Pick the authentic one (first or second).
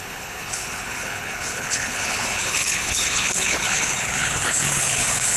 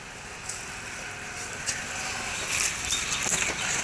second